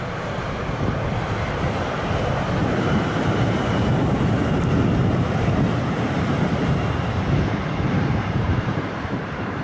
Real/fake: fake